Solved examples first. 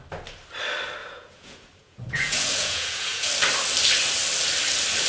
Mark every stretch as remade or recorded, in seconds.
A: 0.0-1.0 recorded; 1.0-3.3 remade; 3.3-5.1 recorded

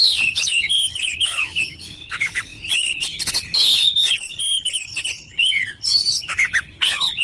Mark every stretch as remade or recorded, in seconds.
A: 0.0-7.2 remade

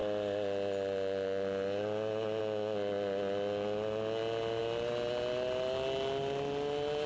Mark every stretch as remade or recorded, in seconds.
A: 0.0-7.1 recorded

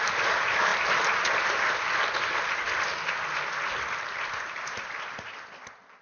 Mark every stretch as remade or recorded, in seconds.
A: 0.0-6.0 recorded

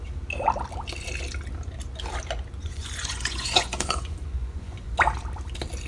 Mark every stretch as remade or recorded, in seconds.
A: 0.0-2.6 recorded; 2.6-4.9 remade; 4.9-5.9 recorded